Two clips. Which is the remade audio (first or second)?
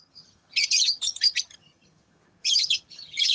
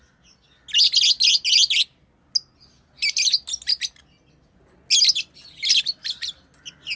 first